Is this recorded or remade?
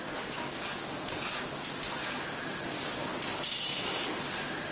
recorded